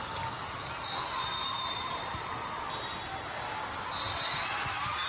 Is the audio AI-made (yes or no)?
no